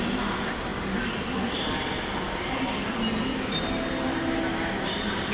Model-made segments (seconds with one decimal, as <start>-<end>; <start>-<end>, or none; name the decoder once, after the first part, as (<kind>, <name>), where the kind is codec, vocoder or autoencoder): none

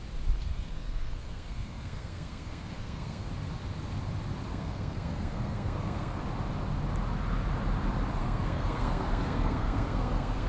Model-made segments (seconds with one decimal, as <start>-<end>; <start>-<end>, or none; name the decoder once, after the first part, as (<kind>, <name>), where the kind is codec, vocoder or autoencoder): 0.4-3.3 (codec, SNAC); 4.5-6.2; 8.2-10.5

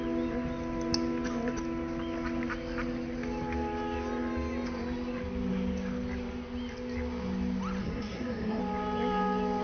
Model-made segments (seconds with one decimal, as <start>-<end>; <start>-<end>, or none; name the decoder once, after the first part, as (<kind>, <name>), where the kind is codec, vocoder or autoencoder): 7.8-8.6 (codec, SNAC)

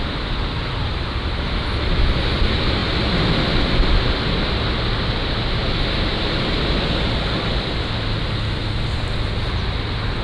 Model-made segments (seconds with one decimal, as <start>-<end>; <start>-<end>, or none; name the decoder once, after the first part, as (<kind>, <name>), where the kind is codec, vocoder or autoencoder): none